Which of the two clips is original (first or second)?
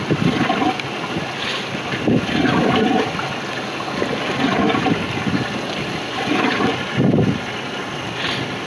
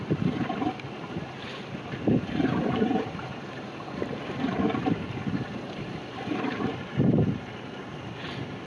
first